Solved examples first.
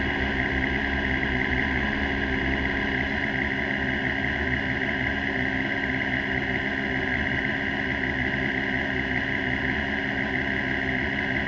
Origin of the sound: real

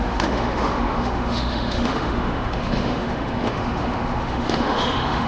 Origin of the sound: fake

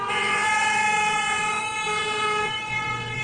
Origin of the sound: fake